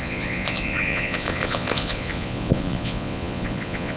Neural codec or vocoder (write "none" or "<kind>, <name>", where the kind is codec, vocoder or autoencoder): vocoder, Vocos